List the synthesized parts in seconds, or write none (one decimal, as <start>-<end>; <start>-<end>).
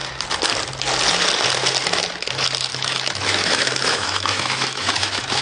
2.7-5.4